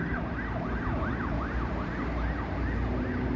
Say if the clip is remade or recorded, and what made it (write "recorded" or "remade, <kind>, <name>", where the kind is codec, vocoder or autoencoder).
recorded